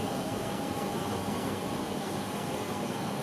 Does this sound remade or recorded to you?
remade